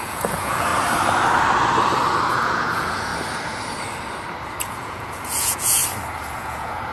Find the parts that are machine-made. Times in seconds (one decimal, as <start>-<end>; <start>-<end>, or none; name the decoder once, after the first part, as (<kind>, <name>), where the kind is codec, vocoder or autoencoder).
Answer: 0.0-0.7 (vocoder, Vocos); 2.3-3.1; 4.6-5.8; 6.3-6.9

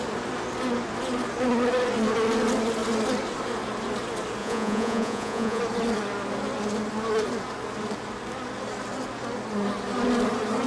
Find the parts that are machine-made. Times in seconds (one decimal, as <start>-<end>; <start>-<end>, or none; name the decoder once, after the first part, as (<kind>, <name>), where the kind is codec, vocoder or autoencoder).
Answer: 4.4-5.6 (vocoder, Vocos)